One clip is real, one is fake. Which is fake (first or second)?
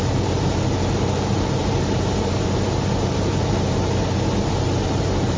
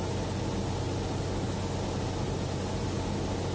first